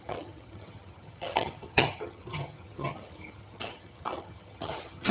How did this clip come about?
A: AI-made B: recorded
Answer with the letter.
A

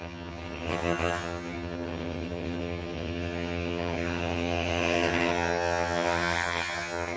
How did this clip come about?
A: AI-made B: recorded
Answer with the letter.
A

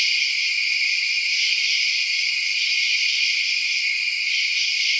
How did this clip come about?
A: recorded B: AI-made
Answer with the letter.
A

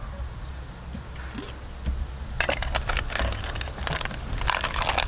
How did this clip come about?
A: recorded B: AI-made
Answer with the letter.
A